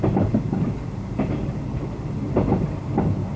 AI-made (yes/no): yes